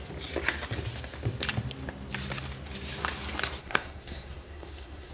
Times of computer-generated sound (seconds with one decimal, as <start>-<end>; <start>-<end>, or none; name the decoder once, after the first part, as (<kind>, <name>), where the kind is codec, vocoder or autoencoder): 3.6-5.1 (codec, SNAC)